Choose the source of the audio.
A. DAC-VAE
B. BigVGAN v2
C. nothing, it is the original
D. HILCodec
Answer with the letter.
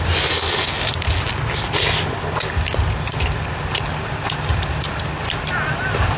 C